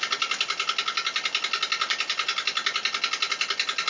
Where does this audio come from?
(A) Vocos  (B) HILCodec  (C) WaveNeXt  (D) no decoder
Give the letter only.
D